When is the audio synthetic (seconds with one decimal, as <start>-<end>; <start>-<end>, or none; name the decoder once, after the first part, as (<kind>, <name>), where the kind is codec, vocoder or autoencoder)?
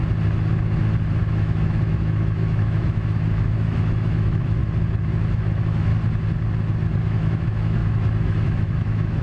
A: 1.2-4.6 (autoencoder, DAC-VAE); 5.3-5.9; 7.0-9.2